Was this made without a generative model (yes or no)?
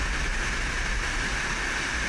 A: yes